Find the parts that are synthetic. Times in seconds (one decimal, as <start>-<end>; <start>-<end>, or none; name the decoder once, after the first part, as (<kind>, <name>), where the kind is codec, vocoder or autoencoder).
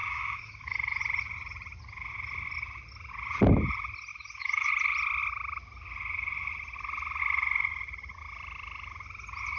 0.0-1.0 (autoencoder, DAC-VAE); 4.1-4.7